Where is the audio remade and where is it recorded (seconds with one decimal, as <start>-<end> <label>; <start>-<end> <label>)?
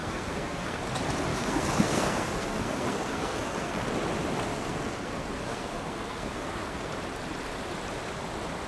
0.0-0.8 remade; 0.8-1.3 recorded; 1.3-3.9 remade; 3.9-4.5 recorded; 4.5-6.9 remade; 6.9-8.7 recorded